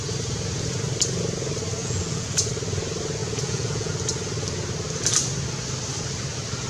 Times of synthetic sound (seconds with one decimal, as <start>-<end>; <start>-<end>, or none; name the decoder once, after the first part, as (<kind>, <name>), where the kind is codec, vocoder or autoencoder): 1.8-2.5 (vocoder, Vocos); 3.2-3.9